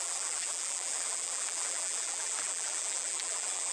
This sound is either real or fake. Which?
fake